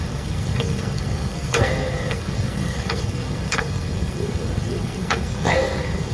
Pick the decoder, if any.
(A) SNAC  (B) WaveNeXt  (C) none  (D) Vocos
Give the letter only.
A